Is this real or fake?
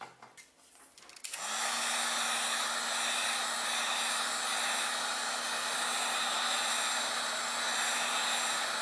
real